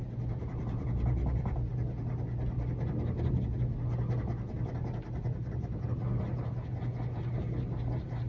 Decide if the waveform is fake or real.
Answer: real